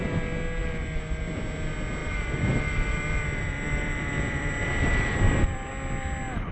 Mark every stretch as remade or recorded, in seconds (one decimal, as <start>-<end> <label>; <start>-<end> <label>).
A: 0.0-0.6 recorded; 0.6-1.2 remade; 1.2-2.0 recorded; 2.0-5.7 remade; 5.7-6.5 recorded